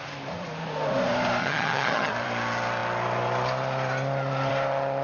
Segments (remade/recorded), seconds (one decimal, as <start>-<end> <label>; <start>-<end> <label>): 0.0-1.4 recorded; 1.4-2.1 remade; 2.1-5.0 recorded